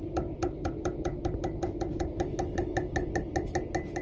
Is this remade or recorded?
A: recorded